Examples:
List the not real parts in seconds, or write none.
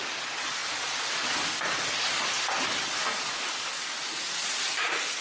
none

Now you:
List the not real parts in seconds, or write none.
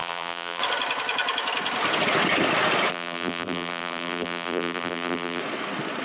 0.0-0.6 (vocoder, BigVGAN v2); 2.9-5.4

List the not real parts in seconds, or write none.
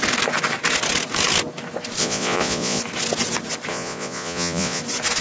2.0-2.8 (vocoder, Vocos); 3.7-4.8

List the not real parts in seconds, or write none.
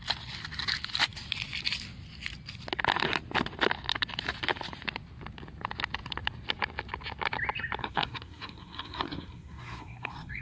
7.8-10.4 (codec, SNAC)